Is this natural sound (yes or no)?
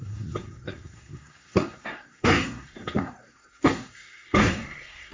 no